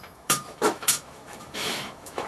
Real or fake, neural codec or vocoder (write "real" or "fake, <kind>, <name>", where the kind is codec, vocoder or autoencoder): fake, autoencoder, DAC-VAE